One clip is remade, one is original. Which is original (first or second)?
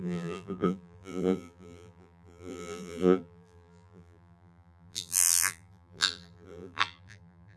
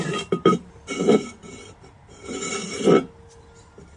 second